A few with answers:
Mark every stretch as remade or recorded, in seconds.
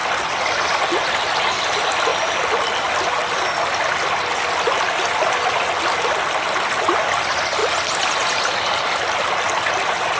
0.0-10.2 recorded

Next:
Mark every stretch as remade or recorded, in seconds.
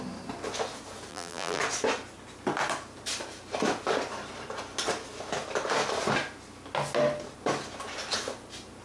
0.0-1.1 recorded; 1.1-1.6 remade; 1.6-8.8 recorded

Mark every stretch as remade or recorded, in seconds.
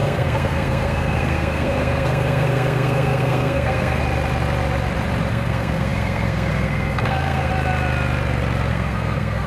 0.0-4.0 remade; 4.0-5.3 recorded; 5.3-7.5 remade; 7.5-8.7 recorded; 8.7-9.5 remade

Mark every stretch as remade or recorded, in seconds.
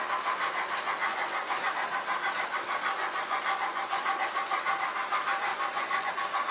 0.0-1.1 recorded; 1.1-1.7 remade; 1.7-3.0 recorded; 3.0-4.0 remade; 4.0-5.5 recorded; 5.5-6.1 remade; 6.1-6.5 recorded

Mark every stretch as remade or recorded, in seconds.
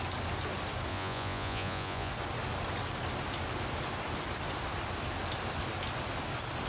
0.0-0.9 recorded; 0.9-2.1 remade; 2.1-6.7 recorded